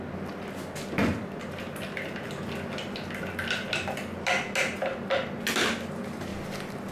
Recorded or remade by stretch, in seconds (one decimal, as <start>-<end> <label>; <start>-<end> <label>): 0.0-6.9 recorded